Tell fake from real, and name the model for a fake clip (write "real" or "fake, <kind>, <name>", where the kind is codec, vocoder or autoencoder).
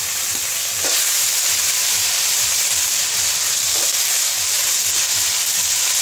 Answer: real